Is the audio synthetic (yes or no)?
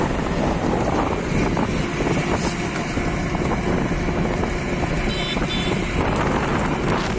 no